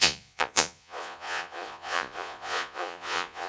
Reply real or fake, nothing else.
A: fake